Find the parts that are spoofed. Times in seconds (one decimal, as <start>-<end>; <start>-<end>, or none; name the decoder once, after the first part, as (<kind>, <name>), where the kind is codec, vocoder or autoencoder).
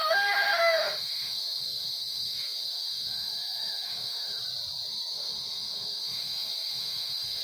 0.0-4.4 (autoencoder, DAC-VAE); 4.9-7.4